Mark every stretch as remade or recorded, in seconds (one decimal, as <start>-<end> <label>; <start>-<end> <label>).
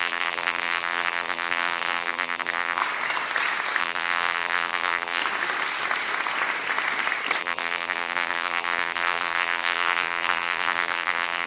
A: 0.0-2.8 remade; 2.8-3.8 recorded; 3.8-5.2 remade; 5.2-7.4 recorded; 7.4-11.5 remade